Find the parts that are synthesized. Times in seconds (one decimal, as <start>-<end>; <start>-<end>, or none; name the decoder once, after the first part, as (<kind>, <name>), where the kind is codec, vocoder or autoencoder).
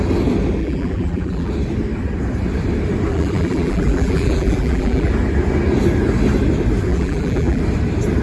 0.6-1.5 (vocoder, BigVGAN v2); 3.1-5.1; 6.9-7.6